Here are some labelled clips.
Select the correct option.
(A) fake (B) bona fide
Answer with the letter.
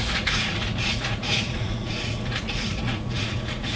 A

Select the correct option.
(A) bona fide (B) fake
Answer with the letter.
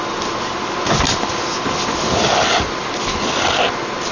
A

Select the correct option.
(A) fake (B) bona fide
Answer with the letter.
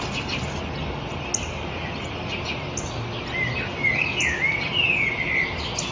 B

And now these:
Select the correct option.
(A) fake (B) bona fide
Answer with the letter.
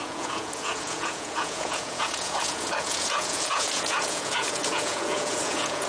A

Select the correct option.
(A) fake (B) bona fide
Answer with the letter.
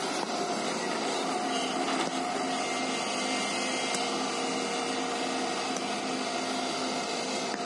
B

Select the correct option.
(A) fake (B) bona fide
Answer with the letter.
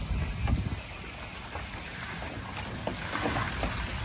B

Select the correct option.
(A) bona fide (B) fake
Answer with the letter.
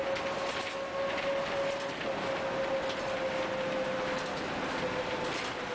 A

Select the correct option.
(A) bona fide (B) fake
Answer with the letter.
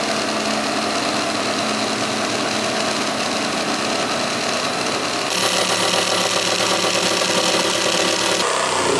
A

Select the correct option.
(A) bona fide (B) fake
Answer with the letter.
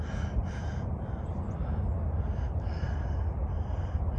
A